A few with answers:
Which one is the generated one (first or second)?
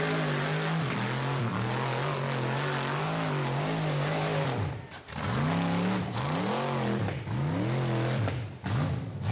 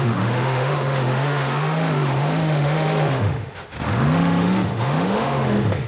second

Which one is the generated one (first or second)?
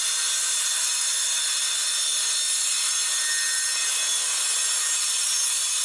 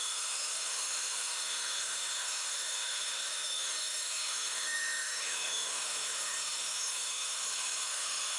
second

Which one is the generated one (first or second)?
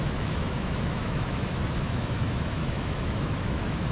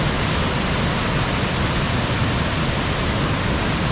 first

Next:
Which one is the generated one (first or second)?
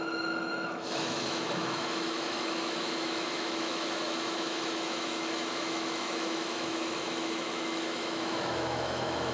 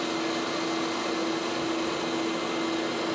first